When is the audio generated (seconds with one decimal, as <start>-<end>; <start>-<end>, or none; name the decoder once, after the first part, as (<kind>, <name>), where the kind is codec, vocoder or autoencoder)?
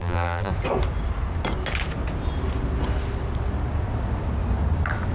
0.0-0.5 (vocoder, BigVGAN v2)